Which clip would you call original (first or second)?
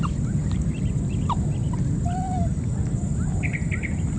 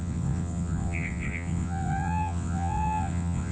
first